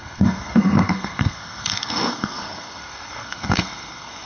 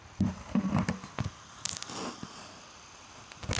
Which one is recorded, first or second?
second